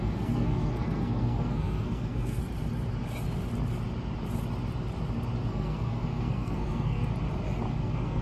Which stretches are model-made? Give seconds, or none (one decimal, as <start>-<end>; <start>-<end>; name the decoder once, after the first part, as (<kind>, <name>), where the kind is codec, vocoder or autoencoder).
0.0-2.4 (codec, SNAC); 5.5-7.1; 7.7-8.2